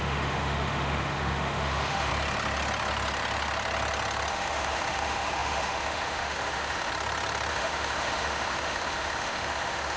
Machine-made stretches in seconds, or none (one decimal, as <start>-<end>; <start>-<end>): 0.0-2.1; 4.3-6.9; 7.5-10.0